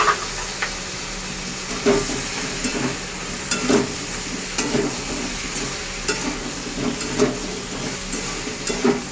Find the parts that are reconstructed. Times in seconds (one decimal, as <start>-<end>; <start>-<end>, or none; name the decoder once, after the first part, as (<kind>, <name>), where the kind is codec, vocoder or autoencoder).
none